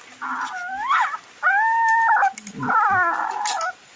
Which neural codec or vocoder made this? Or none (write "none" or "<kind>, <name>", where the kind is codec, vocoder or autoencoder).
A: none